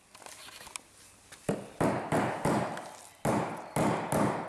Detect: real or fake real